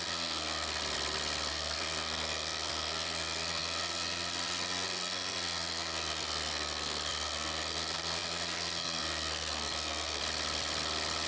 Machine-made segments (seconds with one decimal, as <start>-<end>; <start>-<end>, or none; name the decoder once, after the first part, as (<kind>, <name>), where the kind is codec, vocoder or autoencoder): 0.0-0.8 (codec, SNAC); 1.5-10.2

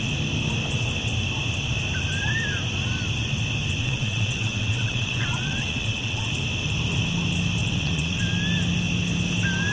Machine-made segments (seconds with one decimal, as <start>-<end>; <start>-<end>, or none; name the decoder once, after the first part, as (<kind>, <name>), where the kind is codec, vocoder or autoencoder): 3.8-6.3 (vocoder, WaveNeXt); 7.6-8.2

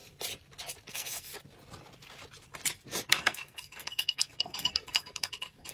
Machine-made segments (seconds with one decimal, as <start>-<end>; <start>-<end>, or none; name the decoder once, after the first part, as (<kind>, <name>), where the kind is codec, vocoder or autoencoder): 0.9-1.3 (codec, SNAC); 3.1-5.7

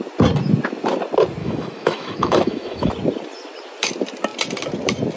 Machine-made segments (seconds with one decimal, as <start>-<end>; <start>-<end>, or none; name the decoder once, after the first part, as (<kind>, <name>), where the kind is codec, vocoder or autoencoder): 1.4-2.9 (autoencoder, DAC-VAE)

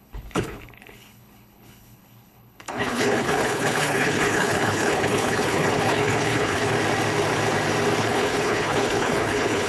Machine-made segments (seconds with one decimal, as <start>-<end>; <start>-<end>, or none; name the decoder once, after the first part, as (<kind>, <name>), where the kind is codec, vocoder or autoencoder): 0.0-6.7 (codec, HILCodec); 8.0-9.7

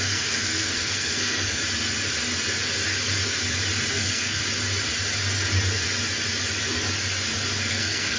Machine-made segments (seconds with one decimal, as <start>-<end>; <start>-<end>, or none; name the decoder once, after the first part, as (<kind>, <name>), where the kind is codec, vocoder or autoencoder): 0.0-1.6 (codec, SNAC); 3.9-4.4; 7.7-8.2